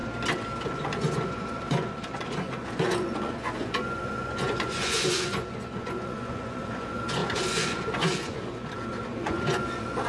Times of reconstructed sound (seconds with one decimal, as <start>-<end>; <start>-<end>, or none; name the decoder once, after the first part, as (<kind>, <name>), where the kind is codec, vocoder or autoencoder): 0.6-10.1 (vocoder, Vocos)